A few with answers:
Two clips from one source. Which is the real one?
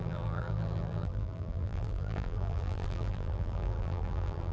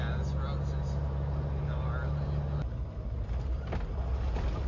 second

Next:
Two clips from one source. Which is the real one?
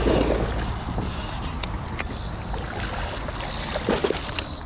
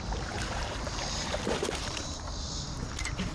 first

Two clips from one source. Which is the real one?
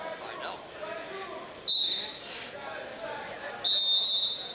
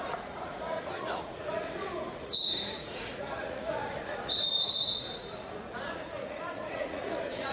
first